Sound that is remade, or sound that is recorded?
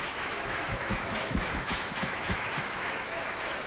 remade